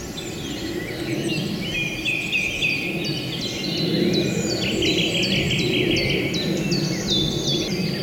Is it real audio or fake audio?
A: real